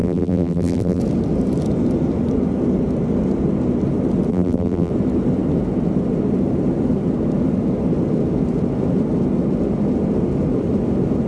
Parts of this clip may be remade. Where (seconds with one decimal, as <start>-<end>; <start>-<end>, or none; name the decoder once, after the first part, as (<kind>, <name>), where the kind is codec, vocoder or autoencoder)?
0.0-1.0 (vocoder, BigVGAN v2); 4.3-4.9